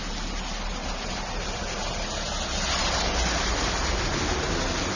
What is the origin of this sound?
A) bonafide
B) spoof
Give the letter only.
A